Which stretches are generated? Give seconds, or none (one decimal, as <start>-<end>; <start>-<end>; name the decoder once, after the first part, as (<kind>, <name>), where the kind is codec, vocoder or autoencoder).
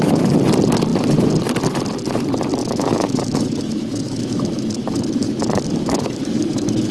2.6-6.9 (autoencoder, DAC-VAE)